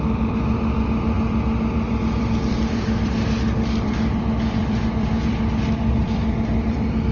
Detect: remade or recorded remade